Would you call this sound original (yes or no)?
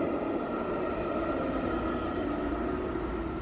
yes